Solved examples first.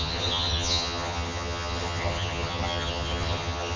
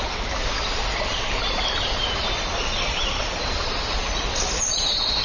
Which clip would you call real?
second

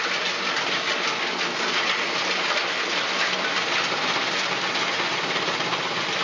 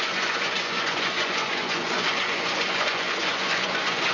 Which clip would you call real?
first